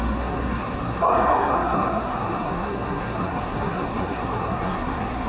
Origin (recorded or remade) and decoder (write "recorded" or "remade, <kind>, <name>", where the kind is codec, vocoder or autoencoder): remade, codec, SNAC